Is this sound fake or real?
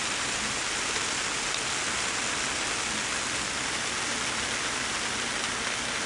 real